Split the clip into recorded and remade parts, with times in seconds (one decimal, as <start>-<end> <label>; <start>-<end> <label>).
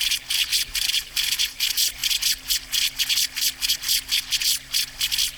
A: 0.0-0.5 recorded; 0.5-1.6 remade; 1.6-5.4 recorded